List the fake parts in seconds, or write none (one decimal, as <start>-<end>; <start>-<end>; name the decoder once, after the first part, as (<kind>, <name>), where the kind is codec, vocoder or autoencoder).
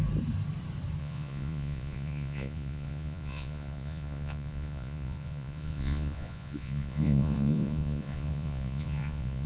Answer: 1.0-9.5 (vocoder, Vocos)